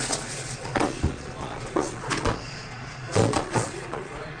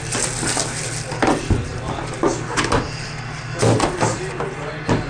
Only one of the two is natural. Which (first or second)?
second